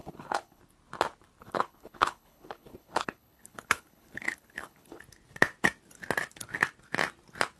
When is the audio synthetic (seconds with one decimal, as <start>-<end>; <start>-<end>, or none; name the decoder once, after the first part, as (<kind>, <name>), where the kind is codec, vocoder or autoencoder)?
0.0-0.6 (codec, HILCodec); 1.4-5.0